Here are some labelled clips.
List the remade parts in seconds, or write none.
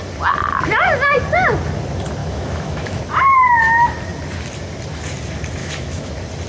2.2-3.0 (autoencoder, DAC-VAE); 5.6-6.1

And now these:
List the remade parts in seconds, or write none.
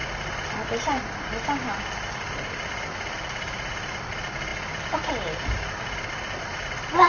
none